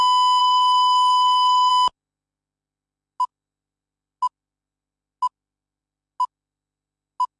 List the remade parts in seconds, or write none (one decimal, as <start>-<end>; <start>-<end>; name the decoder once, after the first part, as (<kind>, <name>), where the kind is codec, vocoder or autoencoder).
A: 0.4-1.7 (codec, SNAC)